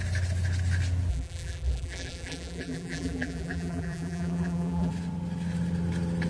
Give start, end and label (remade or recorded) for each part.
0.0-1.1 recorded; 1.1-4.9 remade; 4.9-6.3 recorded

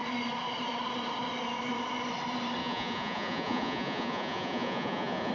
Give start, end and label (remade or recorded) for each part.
0.0-2.6 recorded; 2.6-5.3 remade

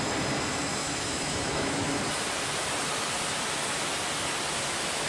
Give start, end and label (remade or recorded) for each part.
0.0-0.8 recorded; 0.8-1.9 remade; 1.9-5.1 recorded

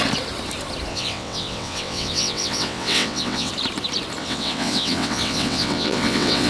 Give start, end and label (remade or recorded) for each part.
0.0-0.9 recorded; 0.9-3.5 remade; 3.5-4.2 recorded; 4.2-6.5 remade